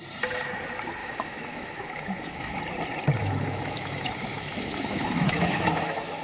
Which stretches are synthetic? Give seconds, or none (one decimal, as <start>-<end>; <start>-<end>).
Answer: 1.0-2.6; 3.2-6.2